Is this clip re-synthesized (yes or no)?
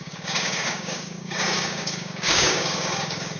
yes